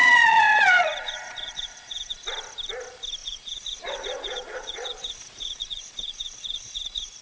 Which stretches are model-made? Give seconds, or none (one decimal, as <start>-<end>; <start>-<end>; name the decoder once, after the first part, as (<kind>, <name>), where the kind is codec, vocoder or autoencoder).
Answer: 0.0-2.2 (vocoder, Vocos); 3.2-7.2